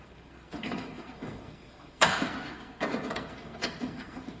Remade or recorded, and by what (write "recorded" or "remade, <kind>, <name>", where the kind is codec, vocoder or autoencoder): remade, codec, SNAC